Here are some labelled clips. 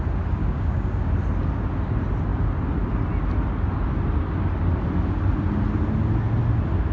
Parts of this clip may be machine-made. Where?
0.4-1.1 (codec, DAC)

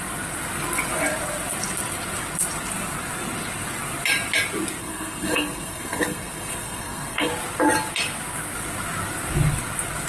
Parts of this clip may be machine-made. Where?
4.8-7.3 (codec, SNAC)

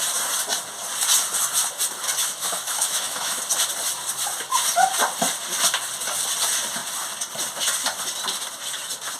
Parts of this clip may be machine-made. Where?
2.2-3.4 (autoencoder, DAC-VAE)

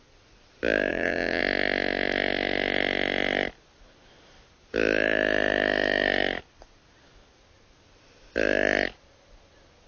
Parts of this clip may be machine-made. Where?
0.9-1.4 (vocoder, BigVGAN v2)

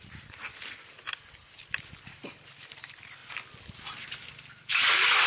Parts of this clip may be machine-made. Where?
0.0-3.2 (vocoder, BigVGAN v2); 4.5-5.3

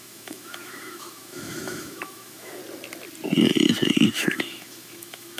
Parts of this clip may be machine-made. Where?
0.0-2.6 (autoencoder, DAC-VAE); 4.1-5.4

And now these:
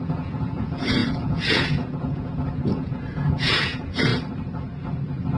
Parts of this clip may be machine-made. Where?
0.0-4.1 (vocoder, Vocos)

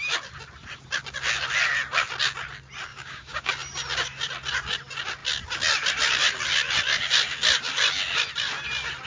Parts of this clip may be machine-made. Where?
2.9-3.5 (codec, DAC)